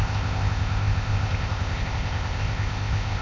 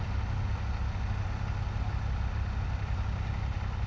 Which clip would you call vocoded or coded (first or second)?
first